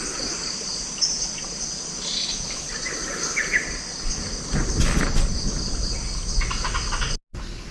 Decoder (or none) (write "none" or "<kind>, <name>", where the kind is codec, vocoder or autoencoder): none